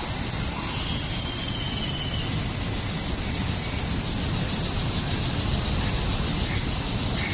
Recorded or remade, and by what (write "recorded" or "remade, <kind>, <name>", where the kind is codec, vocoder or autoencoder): recorded